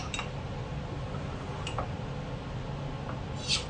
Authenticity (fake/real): real